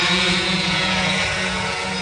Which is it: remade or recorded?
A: remade